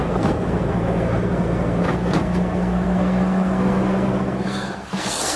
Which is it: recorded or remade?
remade